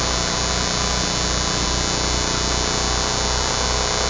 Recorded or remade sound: recorded